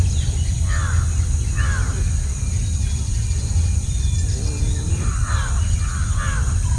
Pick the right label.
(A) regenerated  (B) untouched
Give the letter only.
B